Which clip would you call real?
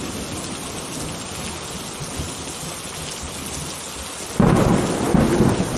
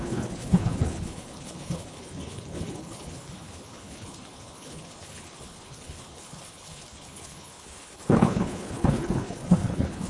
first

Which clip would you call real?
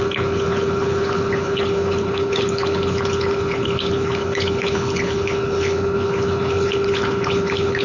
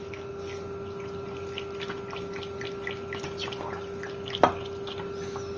second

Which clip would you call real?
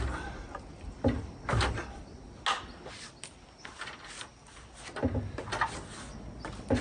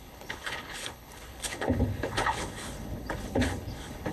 first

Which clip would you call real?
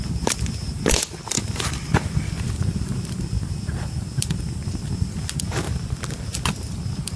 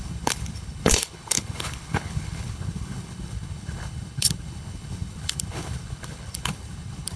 first